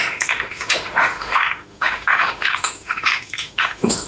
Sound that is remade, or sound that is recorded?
remade